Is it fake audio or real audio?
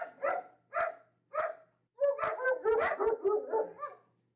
real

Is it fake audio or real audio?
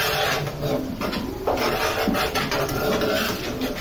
real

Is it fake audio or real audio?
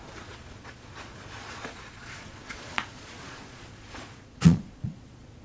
fake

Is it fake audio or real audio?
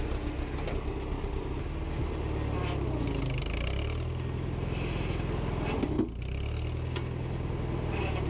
real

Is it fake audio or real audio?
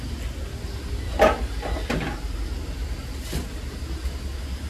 real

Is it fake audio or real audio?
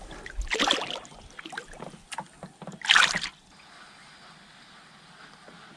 real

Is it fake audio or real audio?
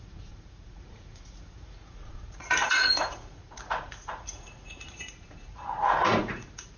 fake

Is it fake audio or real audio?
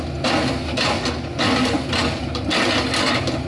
real